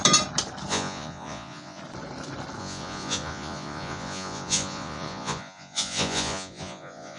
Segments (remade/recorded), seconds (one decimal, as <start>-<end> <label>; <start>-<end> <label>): 0.0-0.7 recorded; 0.7-1.8 remade; 1.8-2.6 recorded; 2.6-7.2 remade